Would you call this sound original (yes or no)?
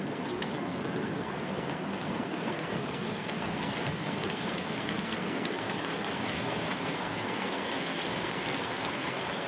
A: no